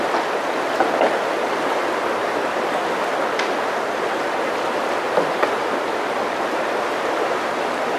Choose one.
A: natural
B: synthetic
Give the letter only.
A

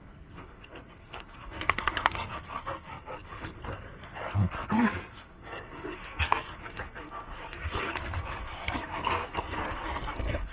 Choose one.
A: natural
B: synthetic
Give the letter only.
B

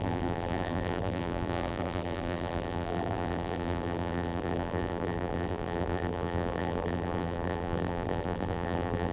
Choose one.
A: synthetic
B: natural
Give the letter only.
A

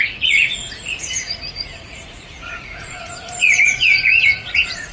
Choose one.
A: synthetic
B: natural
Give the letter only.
A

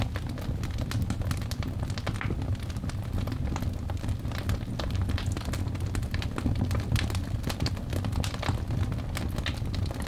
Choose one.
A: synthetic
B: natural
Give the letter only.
B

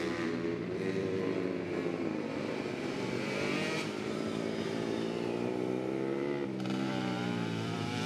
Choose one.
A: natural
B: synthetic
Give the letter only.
B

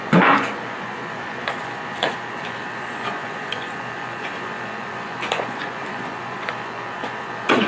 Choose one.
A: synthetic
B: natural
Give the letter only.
A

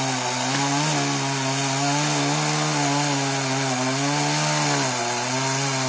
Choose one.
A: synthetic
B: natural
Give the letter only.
B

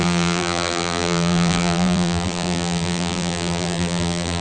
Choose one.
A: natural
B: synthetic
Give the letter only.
B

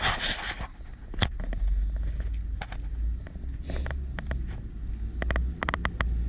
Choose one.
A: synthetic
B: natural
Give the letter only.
B